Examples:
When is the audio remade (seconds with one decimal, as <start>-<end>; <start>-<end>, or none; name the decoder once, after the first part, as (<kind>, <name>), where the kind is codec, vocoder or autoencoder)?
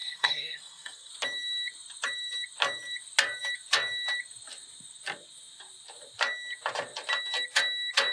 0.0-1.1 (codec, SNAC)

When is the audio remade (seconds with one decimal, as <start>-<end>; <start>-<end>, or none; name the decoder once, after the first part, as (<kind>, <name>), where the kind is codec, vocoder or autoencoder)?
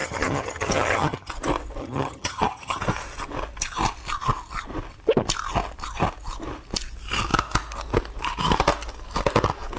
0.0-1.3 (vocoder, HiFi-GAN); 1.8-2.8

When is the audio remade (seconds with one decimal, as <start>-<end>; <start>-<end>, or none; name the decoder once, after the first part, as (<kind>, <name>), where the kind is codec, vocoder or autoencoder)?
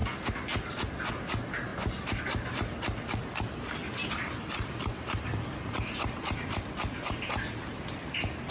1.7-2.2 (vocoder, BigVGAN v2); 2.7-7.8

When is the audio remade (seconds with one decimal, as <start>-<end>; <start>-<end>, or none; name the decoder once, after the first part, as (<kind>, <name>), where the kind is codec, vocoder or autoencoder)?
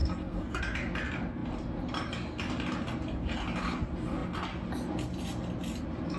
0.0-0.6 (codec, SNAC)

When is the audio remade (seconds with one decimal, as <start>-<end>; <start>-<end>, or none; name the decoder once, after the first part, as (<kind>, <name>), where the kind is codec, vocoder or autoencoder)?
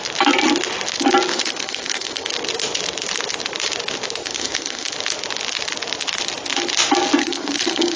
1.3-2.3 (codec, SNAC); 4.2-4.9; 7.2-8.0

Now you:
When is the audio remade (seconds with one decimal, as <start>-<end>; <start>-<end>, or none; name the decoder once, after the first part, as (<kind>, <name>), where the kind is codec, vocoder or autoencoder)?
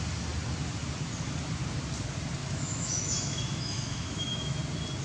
2.4-4.6 (autoencoder, DAC-VAE)